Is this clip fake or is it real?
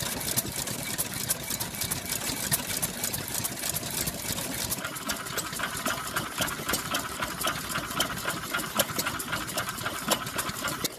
real